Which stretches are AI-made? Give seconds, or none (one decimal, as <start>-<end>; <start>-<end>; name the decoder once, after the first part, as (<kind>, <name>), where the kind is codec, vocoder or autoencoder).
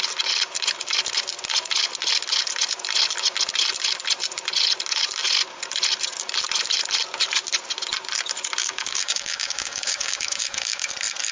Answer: 8.6-10.9 (codec, DAC)